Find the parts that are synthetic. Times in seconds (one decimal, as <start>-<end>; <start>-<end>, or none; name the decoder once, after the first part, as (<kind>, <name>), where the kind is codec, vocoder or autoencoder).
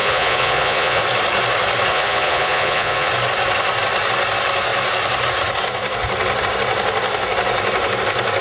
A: 0.0-1.0 (vocoder, Vocos); 1.9-3.1